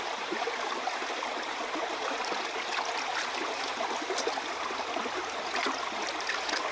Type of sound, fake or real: real